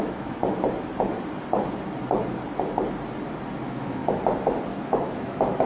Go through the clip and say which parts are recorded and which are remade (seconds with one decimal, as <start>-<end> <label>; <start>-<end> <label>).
0.0-0.4 remade; 0.4-3.6 recorded; 3.6-4.0 remade; 4.0-4.7 recorded; 4.7-5.7 remade